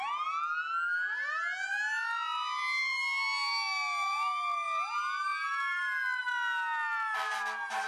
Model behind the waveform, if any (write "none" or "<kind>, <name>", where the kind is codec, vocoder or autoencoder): none